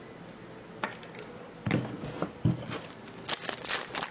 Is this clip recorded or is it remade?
recorded